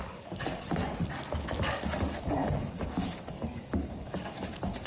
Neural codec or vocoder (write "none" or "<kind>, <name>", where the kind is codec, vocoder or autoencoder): codec, DAC